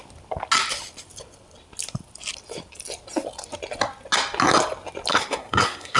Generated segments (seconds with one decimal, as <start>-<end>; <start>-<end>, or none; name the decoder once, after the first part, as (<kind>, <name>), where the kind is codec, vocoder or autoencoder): 5.1-6.0 (codec, SNAC)